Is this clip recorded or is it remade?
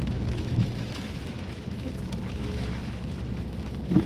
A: remade